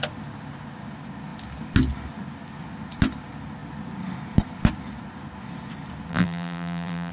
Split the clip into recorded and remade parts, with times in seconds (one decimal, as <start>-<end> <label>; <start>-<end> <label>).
0.0-6.1 recorded; 6.1-7.1 remade